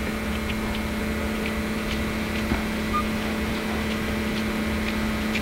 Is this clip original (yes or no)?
yes